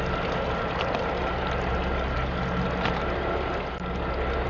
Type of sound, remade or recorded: recorded